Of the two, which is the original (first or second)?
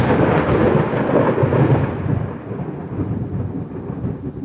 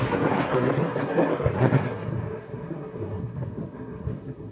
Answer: first